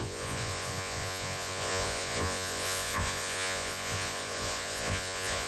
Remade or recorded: remade